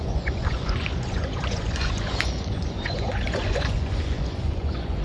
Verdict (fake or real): fake